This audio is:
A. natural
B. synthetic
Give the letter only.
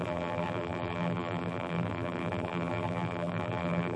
B